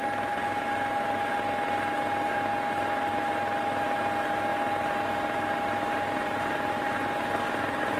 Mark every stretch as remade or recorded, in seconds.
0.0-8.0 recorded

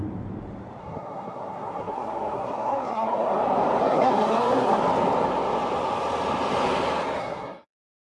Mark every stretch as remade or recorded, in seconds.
0.0-0.8 recorded; 0.8-3.4 remade; 3.4-3.8 recorded; 3.8-4.8 remade; 4.8-7.2 recorded; 7.2-8.1 remade

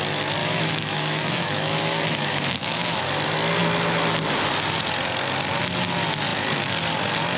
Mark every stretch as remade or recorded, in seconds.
0.0-0.4 recorded; 0.4-3.0 remade; 3.0-7.4 recorded

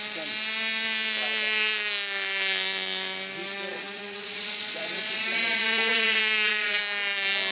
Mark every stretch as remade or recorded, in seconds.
0.0-3.7 recorded; 3.7-6.8 remade; 6.8-7.5 recorded

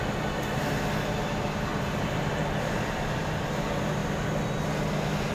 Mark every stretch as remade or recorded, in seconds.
0.0-1.7 recorded; 1.7-3.0 remade; 3.0-5.3 recorded